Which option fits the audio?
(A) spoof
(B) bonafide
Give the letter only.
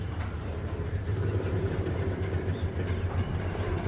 A